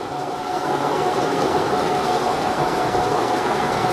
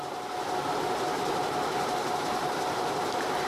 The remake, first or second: first